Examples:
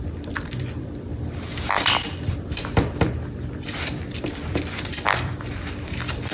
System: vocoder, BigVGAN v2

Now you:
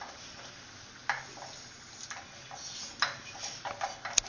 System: none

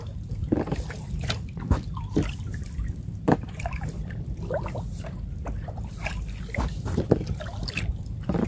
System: vocoder, BigVGAN v2